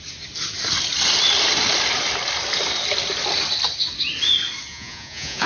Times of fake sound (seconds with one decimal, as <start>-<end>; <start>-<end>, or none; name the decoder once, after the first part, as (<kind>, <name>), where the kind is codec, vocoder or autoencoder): 4.7-5.5 (vocoder, Vocos)